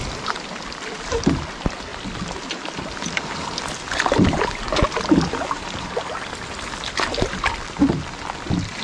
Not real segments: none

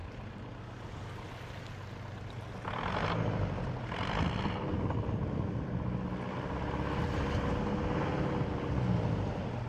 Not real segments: none